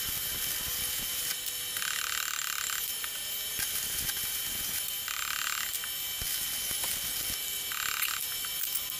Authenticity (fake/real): real